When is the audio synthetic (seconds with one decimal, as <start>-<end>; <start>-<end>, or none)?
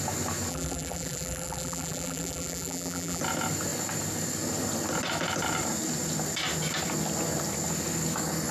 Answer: 0.5-3.2